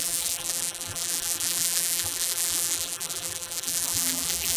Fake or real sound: fake